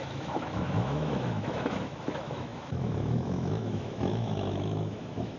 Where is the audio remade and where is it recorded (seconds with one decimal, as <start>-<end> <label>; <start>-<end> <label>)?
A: 0.0-5.4 remade